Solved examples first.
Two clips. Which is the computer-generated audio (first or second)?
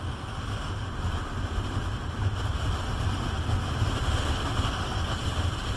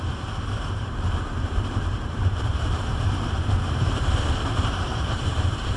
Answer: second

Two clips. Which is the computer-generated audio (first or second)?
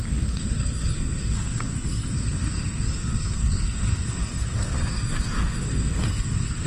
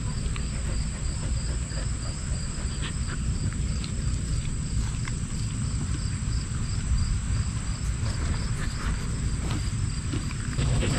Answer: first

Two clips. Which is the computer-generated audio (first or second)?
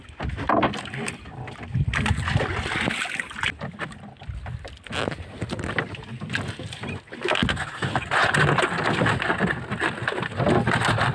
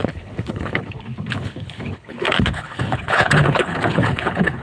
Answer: second